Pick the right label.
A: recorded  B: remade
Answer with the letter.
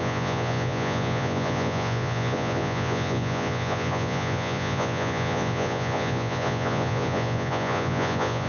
B